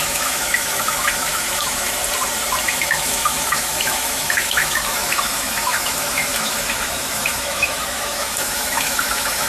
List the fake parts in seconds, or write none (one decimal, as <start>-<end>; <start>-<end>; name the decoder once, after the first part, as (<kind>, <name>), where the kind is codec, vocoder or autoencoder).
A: 0.0-2.0 (autoencoder, DAC-VAE); 2.6-9.5